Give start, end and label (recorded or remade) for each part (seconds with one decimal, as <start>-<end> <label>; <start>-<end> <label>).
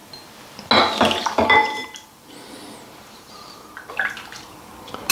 0.0-1.2 recorded; 1.2-5.1 remade